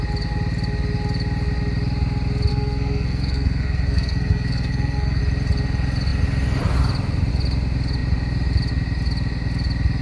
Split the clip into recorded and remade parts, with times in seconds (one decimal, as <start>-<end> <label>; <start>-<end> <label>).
0.0-2.5 recorded; 2.5-5.2 remade; 5.2-10.0 recorded